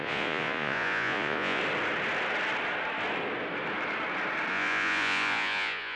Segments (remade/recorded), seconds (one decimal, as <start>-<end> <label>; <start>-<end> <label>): 0.0-1.6 remade; 1.6-4.5 recorded; 4.5-6.0 remade